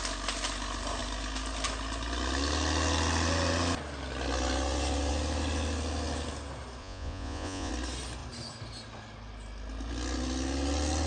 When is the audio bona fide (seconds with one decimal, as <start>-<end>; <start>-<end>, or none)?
0.0-6.8; 7.7-11.1